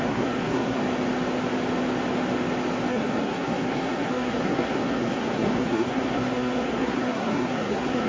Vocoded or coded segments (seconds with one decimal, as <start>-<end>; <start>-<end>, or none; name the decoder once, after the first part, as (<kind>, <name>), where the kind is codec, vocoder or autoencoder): 0.0-0.8 (codec, SNAC); 2.9-8.1